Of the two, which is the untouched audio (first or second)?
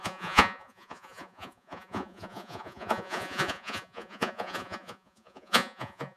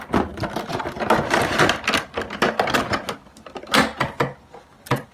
second